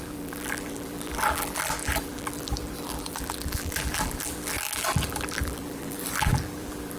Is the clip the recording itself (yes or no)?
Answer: no